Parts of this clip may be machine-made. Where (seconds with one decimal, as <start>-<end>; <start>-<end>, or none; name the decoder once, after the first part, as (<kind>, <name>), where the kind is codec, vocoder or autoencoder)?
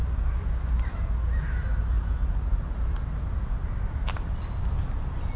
none